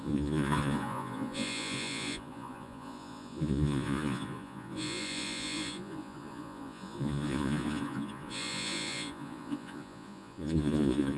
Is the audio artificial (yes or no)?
yes